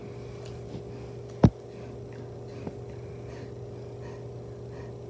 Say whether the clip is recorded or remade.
recorded